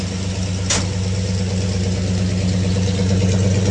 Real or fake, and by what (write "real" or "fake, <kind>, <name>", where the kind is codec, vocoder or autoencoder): real